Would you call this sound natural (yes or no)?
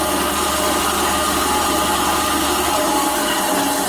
yes